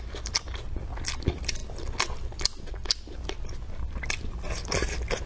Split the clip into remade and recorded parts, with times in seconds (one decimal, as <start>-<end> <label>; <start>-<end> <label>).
0.0-5.3 recorded